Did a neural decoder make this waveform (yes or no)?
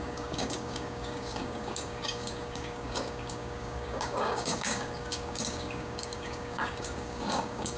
yes